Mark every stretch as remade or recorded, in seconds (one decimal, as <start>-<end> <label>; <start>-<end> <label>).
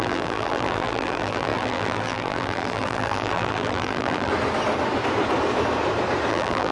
0.0-4.3 remade; 4.3-6.3 recorded; 6.3-6.7 remade